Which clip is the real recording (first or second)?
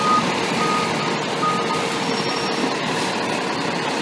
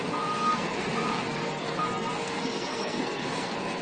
first